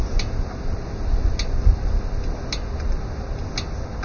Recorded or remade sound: recorded